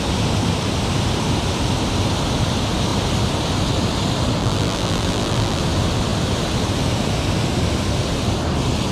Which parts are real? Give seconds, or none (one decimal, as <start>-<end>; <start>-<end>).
0.0-4.4; 5.6-8.9